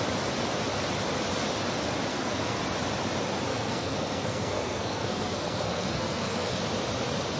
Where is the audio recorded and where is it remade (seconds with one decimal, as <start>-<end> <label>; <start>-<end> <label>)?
0.0-2.1 recorded; 2.1-2.6 remade; 2.6-3.5 recorded; 3.5-6.6 remade; 6.6-7.4 recorded